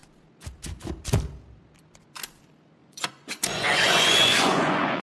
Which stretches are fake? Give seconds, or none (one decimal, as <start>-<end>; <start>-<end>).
2.8-5.0